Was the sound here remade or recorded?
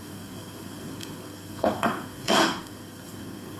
remade